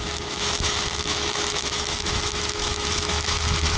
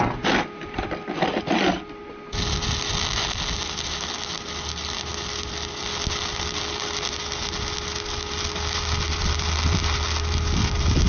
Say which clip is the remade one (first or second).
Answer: first